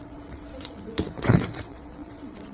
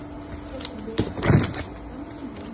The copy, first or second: first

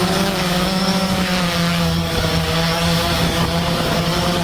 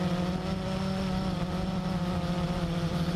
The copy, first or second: first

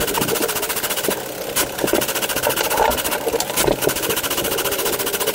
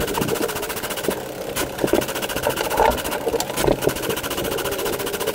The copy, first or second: second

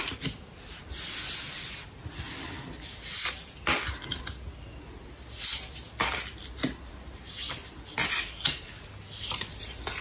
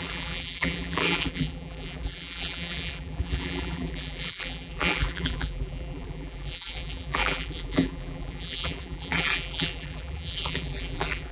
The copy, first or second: second